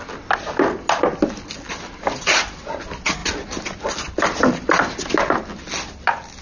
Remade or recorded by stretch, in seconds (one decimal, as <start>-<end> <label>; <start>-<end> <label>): 0.0-6.4 recorded